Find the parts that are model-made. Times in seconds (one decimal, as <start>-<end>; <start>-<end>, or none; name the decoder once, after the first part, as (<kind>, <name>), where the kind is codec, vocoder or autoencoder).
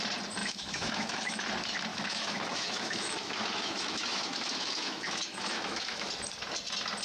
0.4-1.4 (autoencoder, DAC-VAE); 1.9-6.1